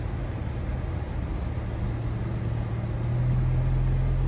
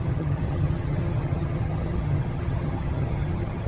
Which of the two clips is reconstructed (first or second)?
second